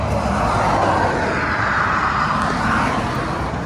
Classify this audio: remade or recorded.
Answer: recorded